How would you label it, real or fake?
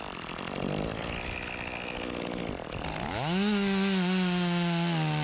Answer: real